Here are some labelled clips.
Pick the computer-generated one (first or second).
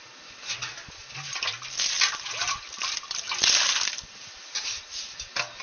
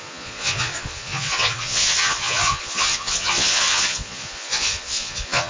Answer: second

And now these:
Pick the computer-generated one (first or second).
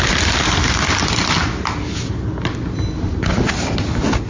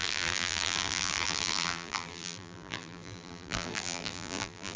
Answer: second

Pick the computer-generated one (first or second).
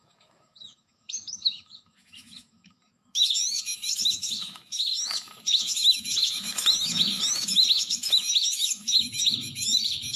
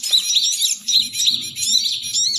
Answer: first